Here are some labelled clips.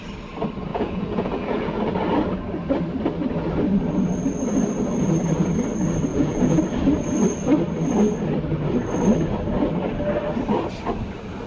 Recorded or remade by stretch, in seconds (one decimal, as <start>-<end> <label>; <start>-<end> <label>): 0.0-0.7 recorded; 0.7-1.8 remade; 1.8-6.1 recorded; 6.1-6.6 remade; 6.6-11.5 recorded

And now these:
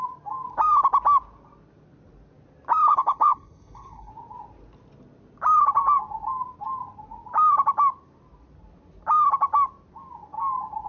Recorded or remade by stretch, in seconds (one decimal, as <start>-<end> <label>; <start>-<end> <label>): 0.0-2.9 recorded; 2.9-4.1 remade; 4.1-10.9 recorded

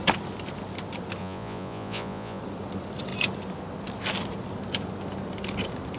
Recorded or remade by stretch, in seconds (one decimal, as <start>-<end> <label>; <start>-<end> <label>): 0.0-1.2 recorded; 1.2-2.4 remade; 2.4-6.0 recorded

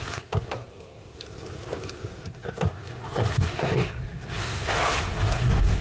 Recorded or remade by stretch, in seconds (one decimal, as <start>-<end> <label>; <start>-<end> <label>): 0.0-5.8 remade